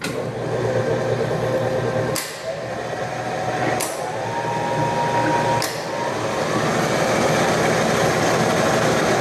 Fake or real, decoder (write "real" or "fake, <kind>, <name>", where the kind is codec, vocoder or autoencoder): real